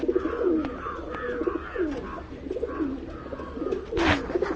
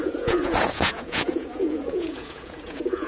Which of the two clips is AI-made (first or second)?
second